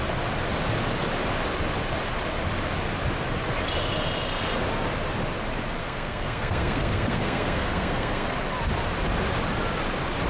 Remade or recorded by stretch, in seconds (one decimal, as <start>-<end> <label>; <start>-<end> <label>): 0.0-5.8 recorded; 5.8-8.3 remade; 8.3-10.3 recorded